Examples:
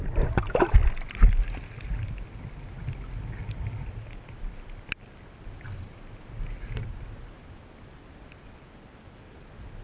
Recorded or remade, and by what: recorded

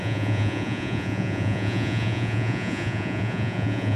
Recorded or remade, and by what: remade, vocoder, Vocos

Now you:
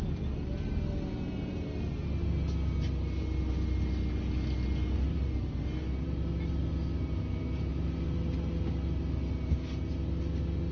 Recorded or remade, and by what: recorded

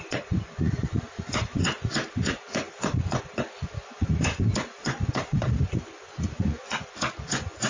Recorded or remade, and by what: remade, vocoder, Vocos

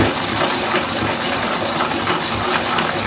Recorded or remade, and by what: recorded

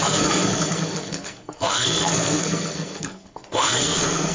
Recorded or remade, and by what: remade, codec, SNAC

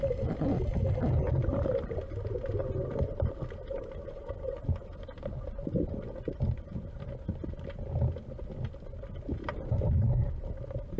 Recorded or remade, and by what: recorded